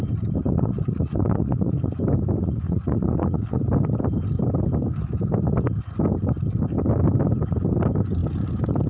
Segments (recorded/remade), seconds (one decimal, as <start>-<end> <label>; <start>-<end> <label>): 0.0-0.4 recorded; 0.4-1.9 remade; 1.9-2.4 recorded; 2.4-3.6 remade; 3.6-8.9 recorded